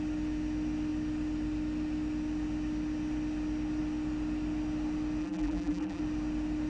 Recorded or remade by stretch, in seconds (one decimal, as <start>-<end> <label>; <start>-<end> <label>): 0.0-5.2 recorded; 5.2-6.0 remade; 6.0-6.7 recorded